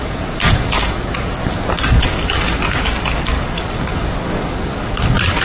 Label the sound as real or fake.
fake